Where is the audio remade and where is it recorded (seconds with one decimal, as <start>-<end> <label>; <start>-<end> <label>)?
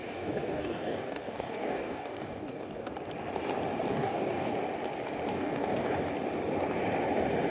0.0-2.9 remade; 2.9-3.9 recorded; 3.9-4.5 remade; 4.5-5.3 recorded; 5.3-5.9 remade; 5.9-7.5 recorded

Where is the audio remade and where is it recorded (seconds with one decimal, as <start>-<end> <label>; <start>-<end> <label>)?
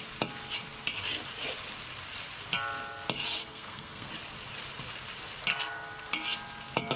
0.0-3.4 recorded; 3.4-4.1 remade; 4.1-5.5 recorded; 5.5-6.1 remade; 6.1-7.0 recorded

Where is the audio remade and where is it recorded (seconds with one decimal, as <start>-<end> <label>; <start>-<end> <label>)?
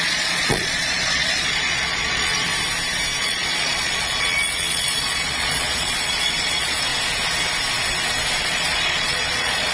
0.0-2.5 remade; 2.5-3.2 recorded; 3.2-6.9 remade; 6.9-8.4 recorded; 8.4-9.7 remade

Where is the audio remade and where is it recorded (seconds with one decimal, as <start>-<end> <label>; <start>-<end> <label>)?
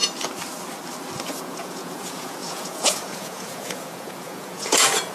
0.0-1.4 recorded; 1.4-5.1 remade